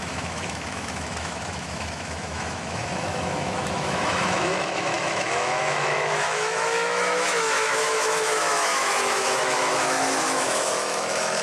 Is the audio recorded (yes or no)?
no